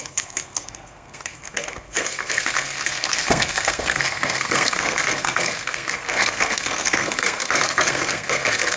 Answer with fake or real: fake